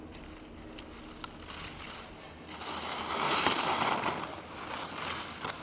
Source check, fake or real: real